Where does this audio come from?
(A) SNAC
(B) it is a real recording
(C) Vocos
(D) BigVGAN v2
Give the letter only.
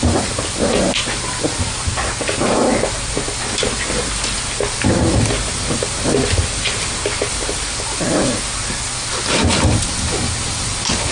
B